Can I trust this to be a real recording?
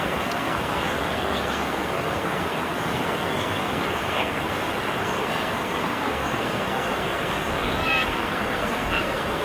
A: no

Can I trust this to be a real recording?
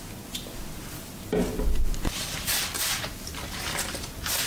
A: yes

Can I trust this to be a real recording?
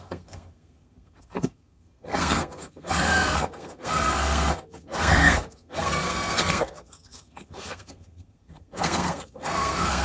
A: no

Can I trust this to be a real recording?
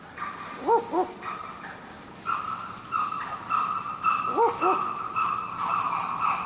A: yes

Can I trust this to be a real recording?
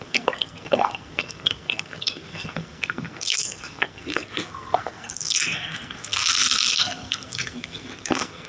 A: no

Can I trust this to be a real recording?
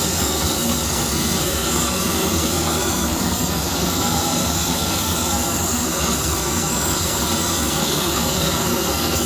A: no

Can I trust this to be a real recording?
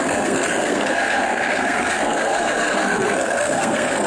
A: no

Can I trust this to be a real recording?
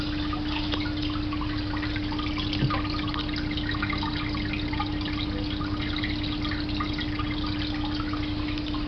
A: yes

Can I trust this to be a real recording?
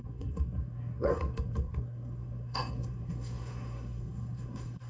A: no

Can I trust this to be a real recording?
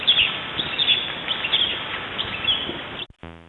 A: yes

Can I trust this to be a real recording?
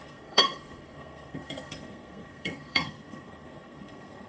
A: no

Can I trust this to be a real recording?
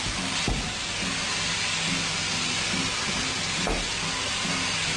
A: yes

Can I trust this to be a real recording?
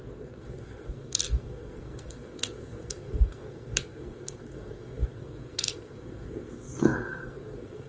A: no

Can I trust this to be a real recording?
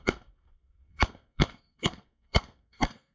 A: no